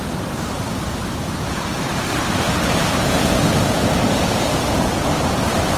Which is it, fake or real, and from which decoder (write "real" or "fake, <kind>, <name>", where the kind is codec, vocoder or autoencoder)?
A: fake, vocoder, BigVGAN v2